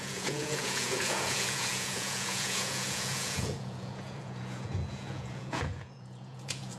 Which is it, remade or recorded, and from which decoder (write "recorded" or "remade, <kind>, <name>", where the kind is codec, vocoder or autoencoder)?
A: remade, vocoder, Vocos